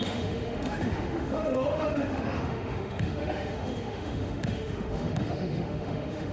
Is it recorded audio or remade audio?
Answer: remade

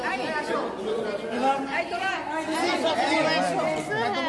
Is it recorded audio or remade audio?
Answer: recorded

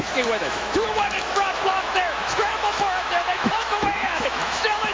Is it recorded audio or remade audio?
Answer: remade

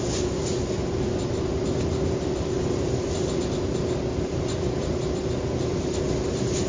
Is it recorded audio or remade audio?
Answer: recorded